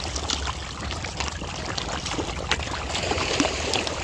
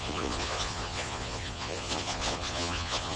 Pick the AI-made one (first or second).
second